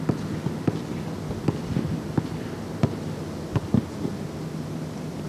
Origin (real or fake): real